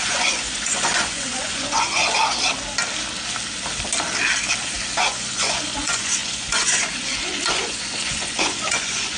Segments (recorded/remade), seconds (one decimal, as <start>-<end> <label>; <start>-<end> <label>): 0.0-2.0 remade; 2.0-5.0 recorded; 5.0-9.2 remade